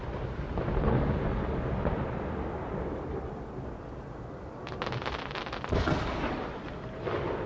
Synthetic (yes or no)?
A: no